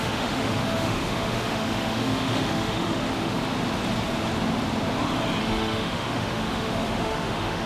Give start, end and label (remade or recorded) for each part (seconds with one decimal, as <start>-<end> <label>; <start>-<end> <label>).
0.0-3.4 remade; 3.4-5.4 recorded; 5.4-7.7 remade